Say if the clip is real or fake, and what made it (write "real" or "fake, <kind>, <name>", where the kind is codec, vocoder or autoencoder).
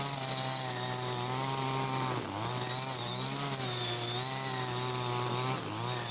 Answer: real